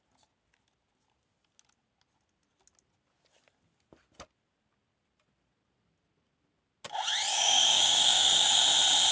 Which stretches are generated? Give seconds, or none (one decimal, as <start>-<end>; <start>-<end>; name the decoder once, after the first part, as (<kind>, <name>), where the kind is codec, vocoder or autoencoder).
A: 7.3-8.6 (codec, DAC)